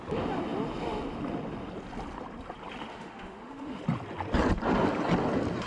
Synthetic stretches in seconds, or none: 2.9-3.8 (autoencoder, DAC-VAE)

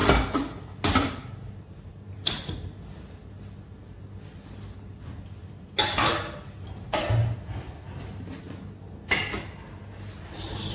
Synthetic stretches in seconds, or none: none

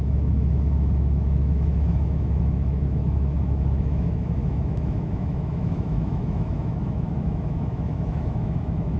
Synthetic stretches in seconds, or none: 0.0-9.0 (autoencoder, DAC-VAE)

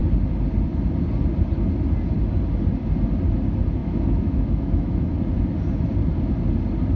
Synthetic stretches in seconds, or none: 3.8-5.1 (autoencoder, DAC-VAE)